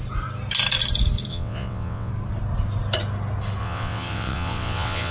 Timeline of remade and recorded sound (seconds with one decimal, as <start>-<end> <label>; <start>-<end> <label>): 0.0-1.3 recorded; 1.3-2.1 remade; 2.1-3.6 recorded; 3.6-5.1 remade